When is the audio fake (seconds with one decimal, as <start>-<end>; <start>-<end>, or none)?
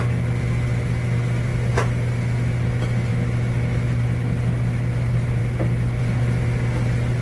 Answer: none